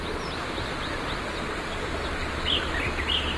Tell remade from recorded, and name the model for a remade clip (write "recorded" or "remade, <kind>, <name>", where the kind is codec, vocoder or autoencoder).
recorded